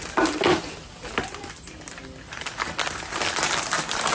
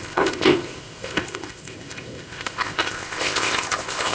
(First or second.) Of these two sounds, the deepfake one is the second